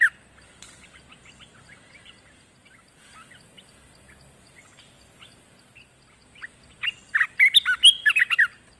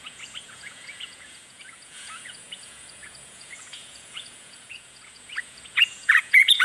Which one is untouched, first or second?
first